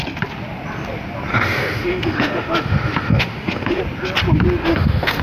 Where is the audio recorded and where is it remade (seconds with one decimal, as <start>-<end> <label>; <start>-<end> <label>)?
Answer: 0.0-1.3 recorded; 1.3-3.8 remade; 3.8-4.6 recorded; 4.6-5.2 remade